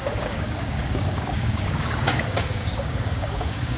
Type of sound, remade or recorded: remade